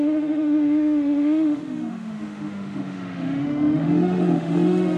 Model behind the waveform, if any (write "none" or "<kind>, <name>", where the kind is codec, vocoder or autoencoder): autoencoder, DAC-VAE